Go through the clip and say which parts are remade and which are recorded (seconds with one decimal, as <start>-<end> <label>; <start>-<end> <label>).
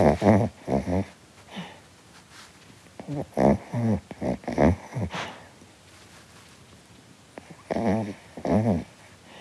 0.0-9.4 recorded